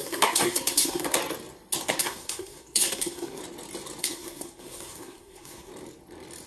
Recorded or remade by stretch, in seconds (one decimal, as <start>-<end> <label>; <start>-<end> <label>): 0.0-1.2 remade; 1.2-1.8 recorded; 1.8-3.4 remade; 3.4-4.0 recorded; 4.0-5.7 remade; 5.7-6.5 recorded